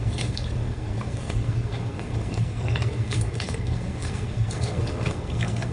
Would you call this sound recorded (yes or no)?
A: no